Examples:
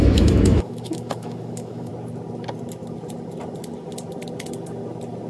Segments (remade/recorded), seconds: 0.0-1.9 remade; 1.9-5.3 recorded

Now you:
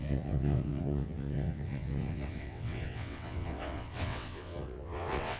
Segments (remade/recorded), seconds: 0.0-5.4 remade

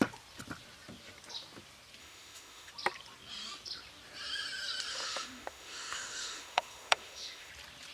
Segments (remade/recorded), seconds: 0.0-2.0 recorded; 2.0-2.7 remade; 2.7-4.9 recorded; 4.9-7.5 remade; 7.5-7.9 recorded